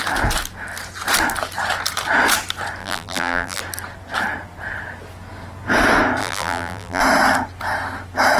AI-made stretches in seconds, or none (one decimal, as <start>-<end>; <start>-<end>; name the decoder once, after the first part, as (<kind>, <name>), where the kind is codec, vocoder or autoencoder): 2.8-3.6 (vocoder, BigVGAN v2); 6.2-7.0